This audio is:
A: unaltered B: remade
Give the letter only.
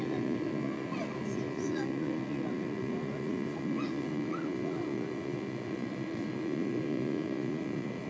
B